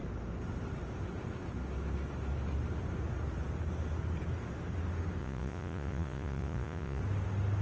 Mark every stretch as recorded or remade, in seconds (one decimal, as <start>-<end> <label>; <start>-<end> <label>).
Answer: 0.0-5.2 recorded; 5.2-7.0 remade; 7.0-7.6 recorded